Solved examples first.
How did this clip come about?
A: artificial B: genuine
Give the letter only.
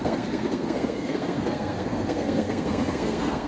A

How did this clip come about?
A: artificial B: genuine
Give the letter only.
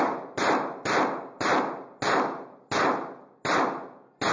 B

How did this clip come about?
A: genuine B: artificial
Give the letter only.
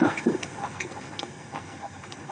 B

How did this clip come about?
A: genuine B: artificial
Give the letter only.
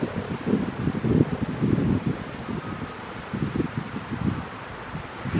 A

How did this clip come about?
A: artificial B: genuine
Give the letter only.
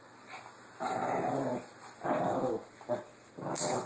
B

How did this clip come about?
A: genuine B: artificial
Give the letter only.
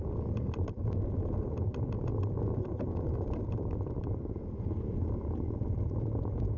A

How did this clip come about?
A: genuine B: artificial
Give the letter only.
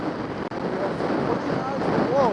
A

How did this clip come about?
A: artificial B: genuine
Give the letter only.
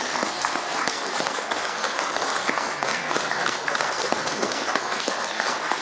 A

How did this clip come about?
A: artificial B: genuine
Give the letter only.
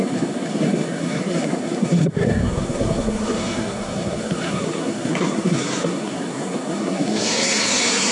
A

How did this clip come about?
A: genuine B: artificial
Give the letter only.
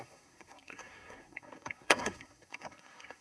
B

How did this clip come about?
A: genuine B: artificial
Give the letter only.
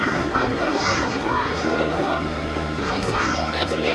B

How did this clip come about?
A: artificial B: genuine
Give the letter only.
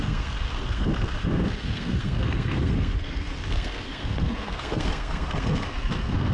A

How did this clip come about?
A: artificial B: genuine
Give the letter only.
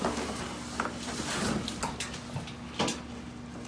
B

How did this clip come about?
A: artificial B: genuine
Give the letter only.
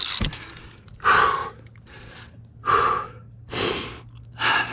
B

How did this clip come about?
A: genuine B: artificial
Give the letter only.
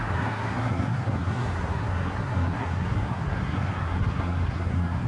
B